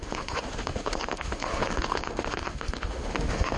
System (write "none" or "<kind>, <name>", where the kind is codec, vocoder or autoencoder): autoencoder, DAC-VAE